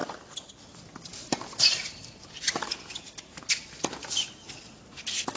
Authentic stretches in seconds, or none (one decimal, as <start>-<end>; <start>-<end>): 0.0-1.1; 4.3-5.4